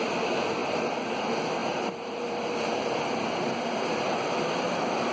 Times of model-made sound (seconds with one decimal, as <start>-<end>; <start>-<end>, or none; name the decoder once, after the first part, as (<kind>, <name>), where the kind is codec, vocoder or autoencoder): 0.6-1.2 (vocoder, BigVGAN v2); 1.6-5.1